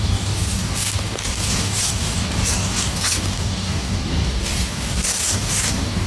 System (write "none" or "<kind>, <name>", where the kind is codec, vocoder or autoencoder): codec, DAC